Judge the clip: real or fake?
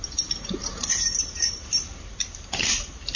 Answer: real